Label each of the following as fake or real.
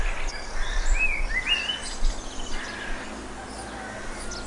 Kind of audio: real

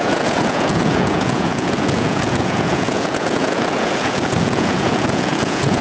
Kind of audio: fake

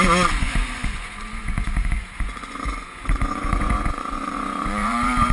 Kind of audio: fake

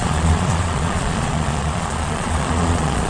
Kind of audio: fake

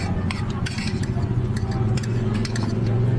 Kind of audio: fake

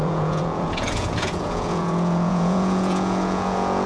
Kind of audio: fake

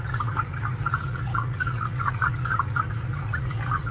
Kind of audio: fake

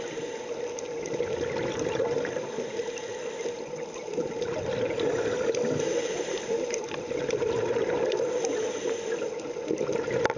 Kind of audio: real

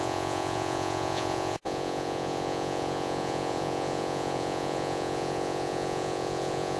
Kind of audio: fake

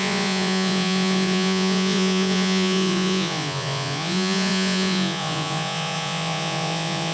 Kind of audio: fake